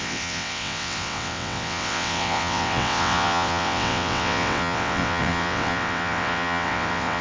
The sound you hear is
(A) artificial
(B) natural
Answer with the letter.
A